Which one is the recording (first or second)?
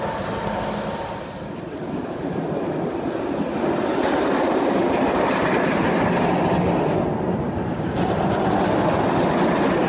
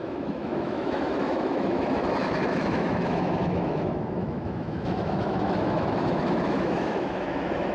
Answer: first